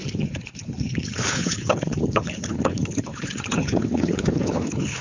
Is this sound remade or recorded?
remade